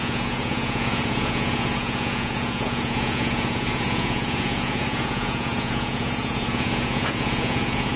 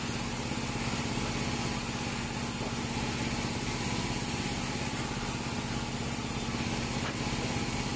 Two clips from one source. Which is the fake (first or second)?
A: first